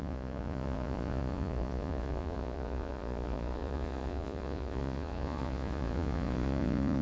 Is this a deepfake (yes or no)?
yes